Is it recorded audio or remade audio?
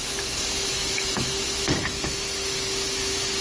remade